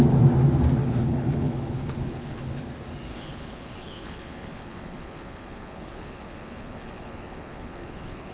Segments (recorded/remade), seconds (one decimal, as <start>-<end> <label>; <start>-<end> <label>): 0.0-0.8 recorded; 0.8-2.6 remade; 2.6-3.1 recorded; 3.1-8.3 remade